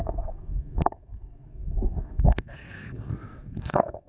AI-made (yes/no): yes